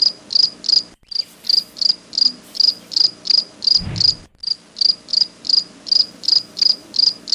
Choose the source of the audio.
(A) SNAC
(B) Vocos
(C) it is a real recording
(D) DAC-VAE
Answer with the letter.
C